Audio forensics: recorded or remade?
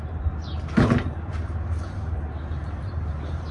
remade